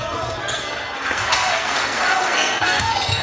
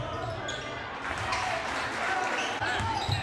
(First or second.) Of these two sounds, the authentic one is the second